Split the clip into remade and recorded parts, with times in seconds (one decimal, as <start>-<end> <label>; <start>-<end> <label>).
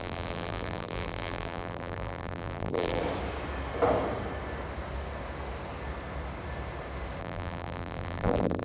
0.0-3.0 remade; 3.0-7.2 recorded; 7.2-8.6 remade